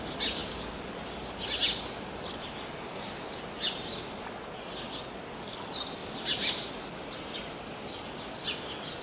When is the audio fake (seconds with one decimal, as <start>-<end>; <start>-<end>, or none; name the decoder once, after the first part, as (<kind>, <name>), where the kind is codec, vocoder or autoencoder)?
0.4-0.9 (vocoder, BigVGAN v2); 6.0-6.7